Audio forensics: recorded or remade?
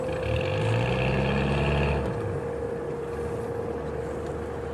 recorded